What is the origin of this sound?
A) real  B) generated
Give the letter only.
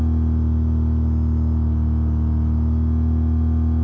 A